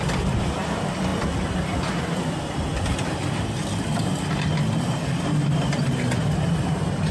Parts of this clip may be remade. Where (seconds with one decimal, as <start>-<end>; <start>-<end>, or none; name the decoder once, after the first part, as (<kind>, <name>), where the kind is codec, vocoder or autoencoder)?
none